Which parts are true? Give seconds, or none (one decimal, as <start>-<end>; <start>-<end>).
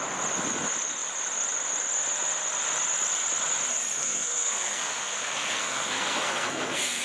0.0-4.0